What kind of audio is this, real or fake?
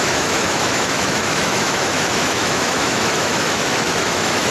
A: fake